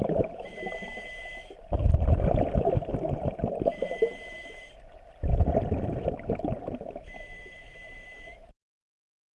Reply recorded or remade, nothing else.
remade